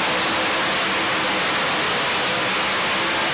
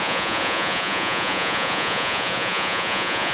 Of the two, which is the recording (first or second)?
first